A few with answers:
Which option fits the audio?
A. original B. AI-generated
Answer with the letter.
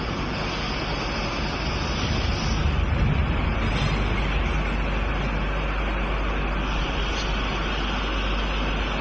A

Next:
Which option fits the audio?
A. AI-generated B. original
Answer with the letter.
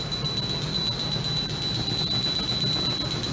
B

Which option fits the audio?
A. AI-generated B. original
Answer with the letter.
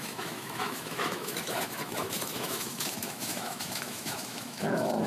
A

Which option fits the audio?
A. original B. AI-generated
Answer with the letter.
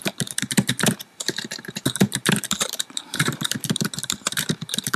B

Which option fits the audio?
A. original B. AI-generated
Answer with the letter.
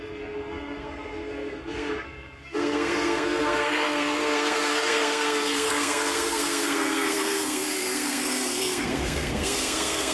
B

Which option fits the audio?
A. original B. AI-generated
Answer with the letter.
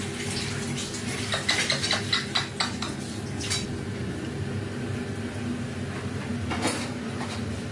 A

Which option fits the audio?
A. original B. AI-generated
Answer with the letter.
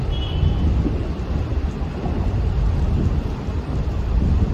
A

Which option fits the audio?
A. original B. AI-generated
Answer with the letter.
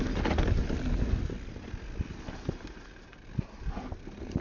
A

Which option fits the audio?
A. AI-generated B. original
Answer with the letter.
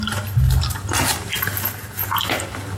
B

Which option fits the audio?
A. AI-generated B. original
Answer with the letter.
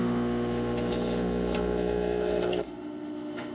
A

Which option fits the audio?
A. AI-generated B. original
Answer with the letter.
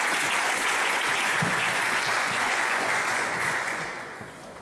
A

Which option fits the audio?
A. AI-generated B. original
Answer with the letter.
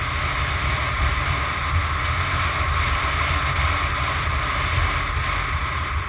B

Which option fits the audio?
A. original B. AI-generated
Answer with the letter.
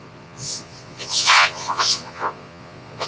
B